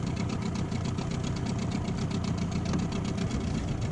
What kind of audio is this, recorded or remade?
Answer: recorded